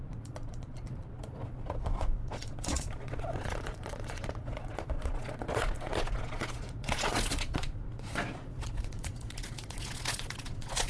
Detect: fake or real fake